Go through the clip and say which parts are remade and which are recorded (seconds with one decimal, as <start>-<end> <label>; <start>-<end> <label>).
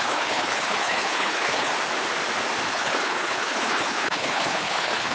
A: 0.0-1.7 remade; 1.7-2.7 recorded; 2.7-5.1 remade